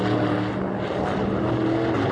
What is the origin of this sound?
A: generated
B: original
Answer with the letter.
B